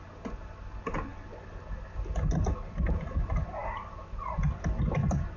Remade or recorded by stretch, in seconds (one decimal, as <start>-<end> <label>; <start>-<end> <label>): 0.0-5.4 recorded